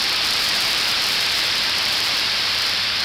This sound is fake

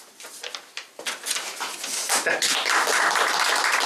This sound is real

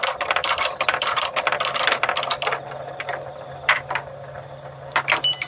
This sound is real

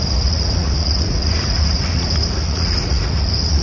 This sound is fake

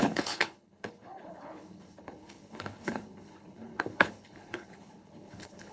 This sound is fake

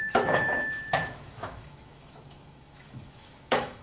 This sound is fake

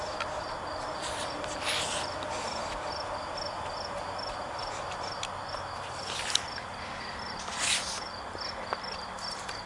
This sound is real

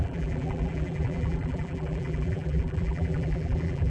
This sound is fake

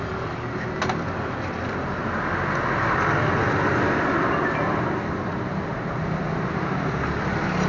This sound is real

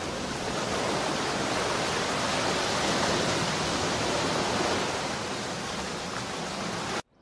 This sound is real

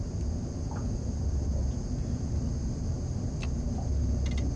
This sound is real